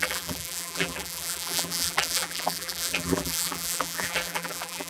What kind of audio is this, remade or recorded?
remade